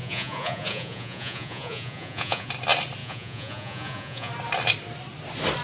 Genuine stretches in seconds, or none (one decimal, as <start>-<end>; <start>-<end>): 2.5-3.0; 4.3-5.6